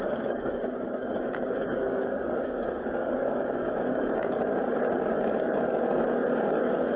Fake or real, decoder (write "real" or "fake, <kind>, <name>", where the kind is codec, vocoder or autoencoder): fake, codec, DAC